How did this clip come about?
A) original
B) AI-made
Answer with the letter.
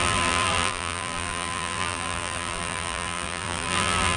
B